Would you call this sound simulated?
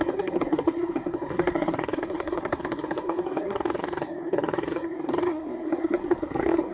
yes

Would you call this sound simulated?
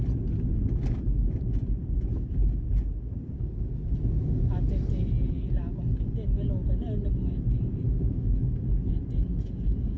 no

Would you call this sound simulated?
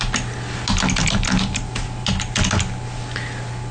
no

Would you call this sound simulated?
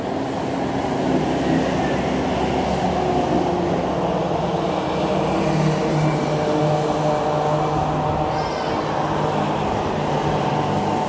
no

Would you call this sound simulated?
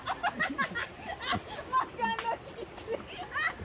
no